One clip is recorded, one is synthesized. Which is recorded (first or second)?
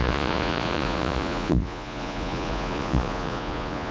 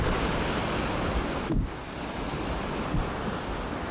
second